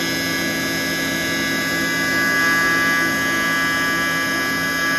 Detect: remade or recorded recorded